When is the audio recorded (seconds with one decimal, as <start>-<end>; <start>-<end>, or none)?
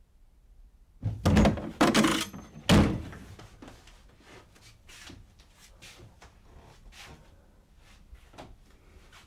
0.0-9.3